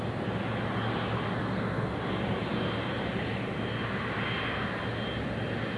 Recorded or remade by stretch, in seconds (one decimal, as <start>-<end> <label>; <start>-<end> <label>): 0.0-1.4 recorded; 1.4-2.0 remade; 2.0-5.8 recorded